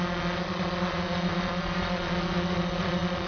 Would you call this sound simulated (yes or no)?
yes